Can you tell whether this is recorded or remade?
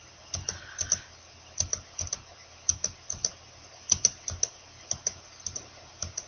recorded